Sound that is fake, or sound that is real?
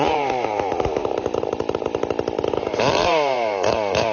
fake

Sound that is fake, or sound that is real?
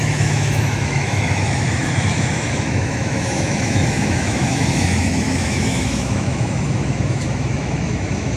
fake